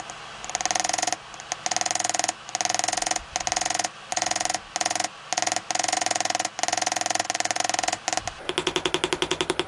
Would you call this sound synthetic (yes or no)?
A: no